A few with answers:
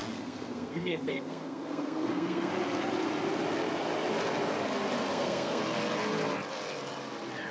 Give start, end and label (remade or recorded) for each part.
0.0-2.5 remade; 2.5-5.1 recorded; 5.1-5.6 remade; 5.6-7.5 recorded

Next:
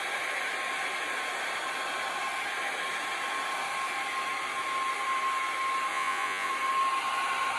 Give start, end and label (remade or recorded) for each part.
0.0-5.9 recorded; 5.9-6.5 remade; 6.5-7.6 recorded

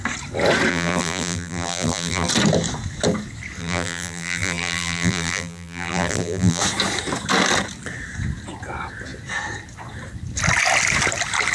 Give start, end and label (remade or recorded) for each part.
0.0-0.7 recorded; 0.7-2.3 remade; 2.3-3.6 recorded; 3.6-6.6 remade; 6.6-11.5 recorded

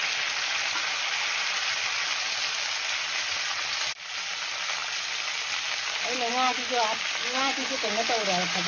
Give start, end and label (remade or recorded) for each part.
0.0-8.7 recorded

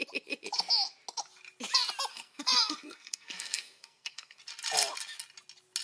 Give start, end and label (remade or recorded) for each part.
0.0-2.1 recorded; 2.1-4.4 remade; 4.4-5.8 recorded

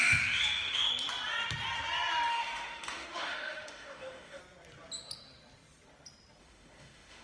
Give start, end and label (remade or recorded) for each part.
0.0-0.9 remade; 0.9-2.3 recorded; 2.3-4.4 remade; 4.4-6.4 recorded; 6.4-7.2 remade

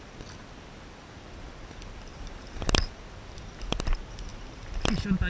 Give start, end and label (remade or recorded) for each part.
0.0-2.1 recorded; 2.1-2.9 remade; 2.9-5.3 recorded

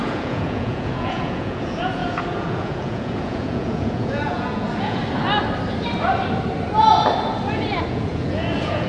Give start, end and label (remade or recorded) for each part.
0.0-5.0 remade; 5.0-7.9 recorded; 7.9-8.9 remade